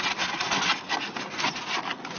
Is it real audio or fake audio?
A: real